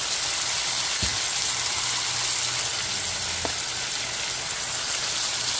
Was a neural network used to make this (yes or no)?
no